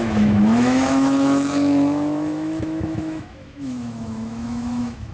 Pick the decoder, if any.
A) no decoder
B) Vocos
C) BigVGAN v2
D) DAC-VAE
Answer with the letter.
D